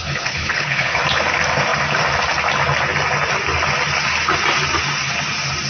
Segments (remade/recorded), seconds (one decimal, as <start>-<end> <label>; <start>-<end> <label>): 0.0-1.0 remade; 1.0-5.7 recorded